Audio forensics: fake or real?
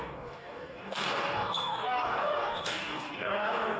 fake